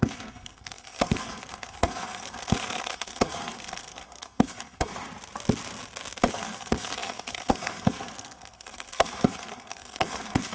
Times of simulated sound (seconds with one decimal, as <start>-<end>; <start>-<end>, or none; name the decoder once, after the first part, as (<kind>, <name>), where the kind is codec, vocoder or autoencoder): 0.0-4.9 (codec, SNAC); 6.3-10.5

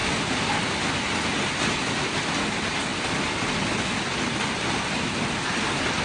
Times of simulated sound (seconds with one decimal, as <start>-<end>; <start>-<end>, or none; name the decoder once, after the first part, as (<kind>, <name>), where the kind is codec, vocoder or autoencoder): none

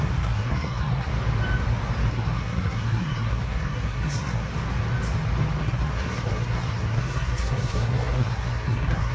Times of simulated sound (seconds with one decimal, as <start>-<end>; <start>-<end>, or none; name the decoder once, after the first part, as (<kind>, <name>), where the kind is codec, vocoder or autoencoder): 0.0-1.1 (codec, SNAC); 2.1-4.5; 5.6-9.1

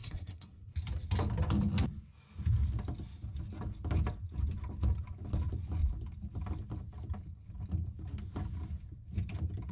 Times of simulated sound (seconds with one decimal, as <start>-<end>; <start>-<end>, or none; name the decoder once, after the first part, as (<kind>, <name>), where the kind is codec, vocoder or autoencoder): 0.0-0.7 (codec, SNAC)

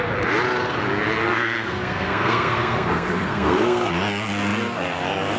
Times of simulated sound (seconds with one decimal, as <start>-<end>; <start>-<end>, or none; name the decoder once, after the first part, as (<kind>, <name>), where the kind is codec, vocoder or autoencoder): 1.2-3.9 (codec, SNAC)

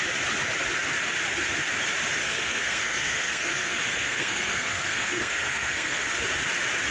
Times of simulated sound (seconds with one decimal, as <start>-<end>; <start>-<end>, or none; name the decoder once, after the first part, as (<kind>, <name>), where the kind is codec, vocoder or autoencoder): 2.2-6.2 (codec, SNAC)

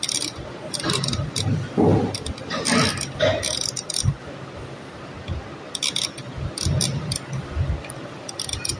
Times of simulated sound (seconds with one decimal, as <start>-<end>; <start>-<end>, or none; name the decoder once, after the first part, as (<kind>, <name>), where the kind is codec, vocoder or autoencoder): none

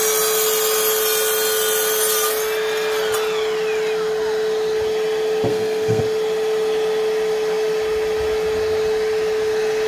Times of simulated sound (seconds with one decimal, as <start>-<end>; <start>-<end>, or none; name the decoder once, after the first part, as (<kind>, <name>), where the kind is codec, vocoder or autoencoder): 5.5-6.0 (codec, SNAC)